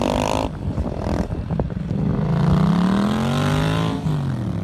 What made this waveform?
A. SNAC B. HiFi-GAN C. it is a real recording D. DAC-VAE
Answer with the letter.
C